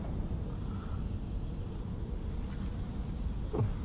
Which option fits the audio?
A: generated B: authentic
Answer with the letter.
B